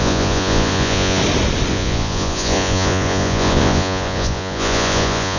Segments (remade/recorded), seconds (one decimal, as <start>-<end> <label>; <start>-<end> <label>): 0.0-1.2 remade; 1.2-1.7 recorded; 1.7-5.4 remade